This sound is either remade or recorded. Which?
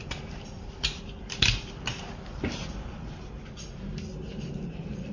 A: recorded